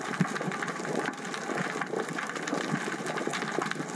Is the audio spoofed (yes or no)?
no